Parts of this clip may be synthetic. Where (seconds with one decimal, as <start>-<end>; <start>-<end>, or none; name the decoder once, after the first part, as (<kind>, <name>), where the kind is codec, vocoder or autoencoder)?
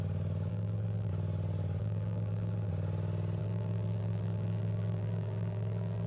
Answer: 0.5-1.1 (vocoder, BigVGAN v2); 1.8-2.7; 3.4-6.1